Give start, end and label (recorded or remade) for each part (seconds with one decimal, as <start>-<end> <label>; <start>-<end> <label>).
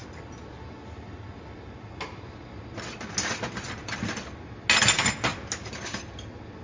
0.0-6.6 recorded